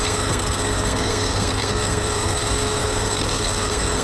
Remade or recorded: remade